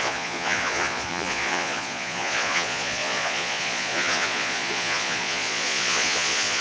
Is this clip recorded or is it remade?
remade